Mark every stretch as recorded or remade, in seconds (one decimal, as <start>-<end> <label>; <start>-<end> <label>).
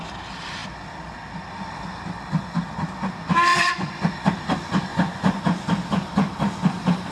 0.0-3.5 recorded; 3.5-4.1 remade; 4.1-4.9 recorded; 4.9-5.4 remade; 5.4-7.1 recorded